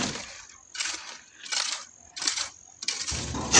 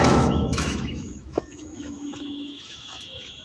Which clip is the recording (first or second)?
first